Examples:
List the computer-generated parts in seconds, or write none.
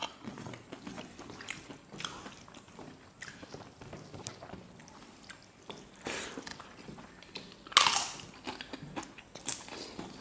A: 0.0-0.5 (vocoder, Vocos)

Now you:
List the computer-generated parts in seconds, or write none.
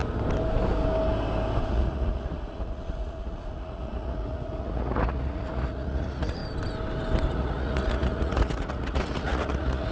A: 1.7-6.4 (vocoder, Vocos); 7.3-9.9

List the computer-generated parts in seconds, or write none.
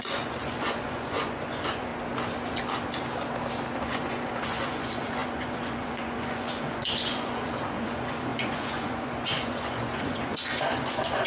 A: 0.0-1.9 (vocoder, Vocos); 3.8-11.3